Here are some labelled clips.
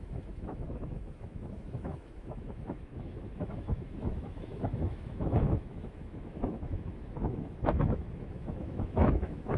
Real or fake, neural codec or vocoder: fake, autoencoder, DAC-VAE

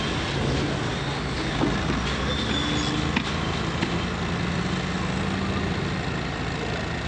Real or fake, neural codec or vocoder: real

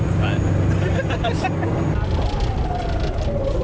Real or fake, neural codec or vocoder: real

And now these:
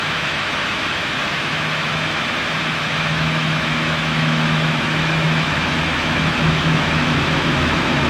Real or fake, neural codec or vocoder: fake, autoencoder, DAC-VAE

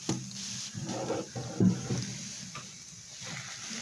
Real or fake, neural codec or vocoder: real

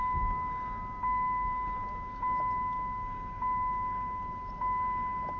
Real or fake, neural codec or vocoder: real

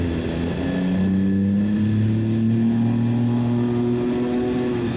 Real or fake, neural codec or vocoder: real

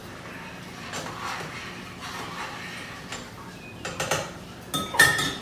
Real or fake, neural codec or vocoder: real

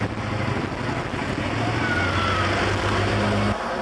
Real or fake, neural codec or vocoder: real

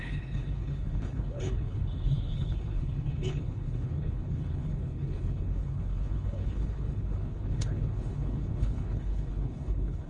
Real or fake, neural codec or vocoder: fake, codec, HILCodec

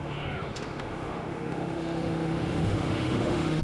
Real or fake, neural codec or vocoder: fake, autoencoder, DAC-VAE